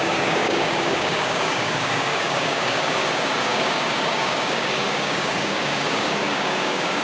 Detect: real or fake fake